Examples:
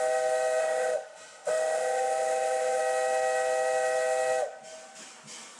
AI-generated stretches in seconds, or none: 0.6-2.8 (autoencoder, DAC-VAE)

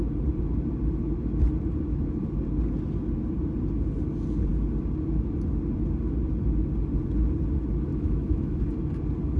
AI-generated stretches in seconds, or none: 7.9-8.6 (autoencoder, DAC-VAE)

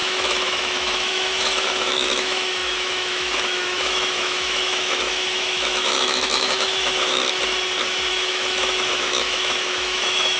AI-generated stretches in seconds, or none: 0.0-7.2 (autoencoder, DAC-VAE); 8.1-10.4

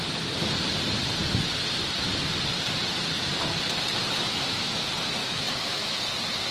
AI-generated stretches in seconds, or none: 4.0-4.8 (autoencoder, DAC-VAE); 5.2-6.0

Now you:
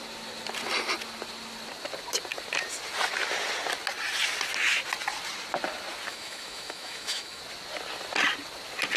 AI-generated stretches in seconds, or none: 6.1-7.4 (autoencoder, DAC-VAE)